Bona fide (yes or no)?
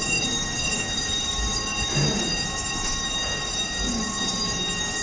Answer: no